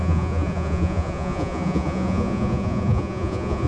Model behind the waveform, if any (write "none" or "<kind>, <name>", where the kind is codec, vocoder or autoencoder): vocoder, Vocos